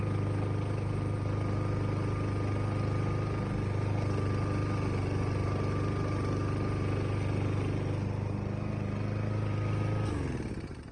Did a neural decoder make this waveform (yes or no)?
no